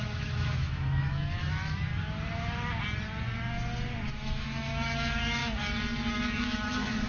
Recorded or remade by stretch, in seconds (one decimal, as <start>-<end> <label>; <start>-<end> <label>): 0.0-1.9 remade; 1.9-4.1 recorded; 4.1-5.4 remade; 5.4-6.1 recorded; 6.1-7.1 remade